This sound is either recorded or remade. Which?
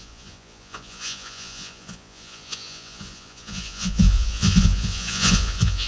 remade